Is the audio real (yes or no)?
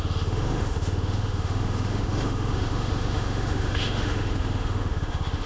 no